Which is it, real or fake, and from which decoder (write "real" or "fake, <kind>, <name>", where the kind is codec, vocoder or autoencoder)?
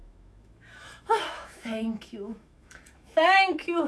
fake, autoencoder, DAC-VAE